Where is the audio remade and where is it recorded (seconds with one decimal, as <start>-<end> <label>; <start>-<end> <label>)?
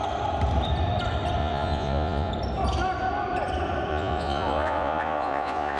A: 0.0-1.4 recorded; 1.4-2.3 remade; 2.3-3.9 recorded; 3.9-5.8 remade